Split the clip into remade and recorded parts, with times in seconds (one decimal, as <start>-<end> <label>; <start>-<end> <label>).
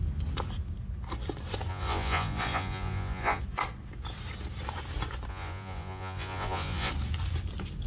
0.0-1.7 recorded; 1.7-3.4 remade; 3.4-5.3 recorded; 5.3-6.9 remade; 6.9-7.9 recorded